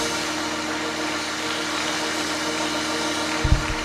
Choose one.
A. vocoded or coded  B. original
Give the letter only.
B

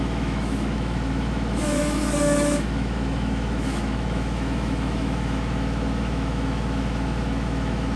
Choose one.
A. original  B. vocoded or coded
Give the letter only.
B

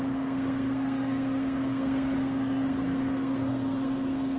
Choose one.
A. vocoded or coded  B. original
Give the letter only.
A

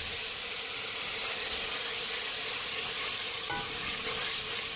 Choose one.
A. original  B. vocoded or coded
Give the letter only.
A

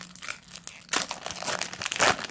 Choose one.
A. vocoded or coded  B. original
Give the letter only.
B